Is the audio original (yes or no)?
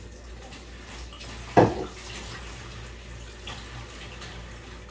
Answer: yes